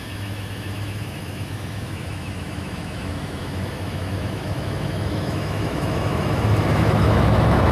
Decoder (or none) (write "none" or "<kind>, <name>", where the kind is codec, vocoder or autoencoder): autoencoder, DAC-VAE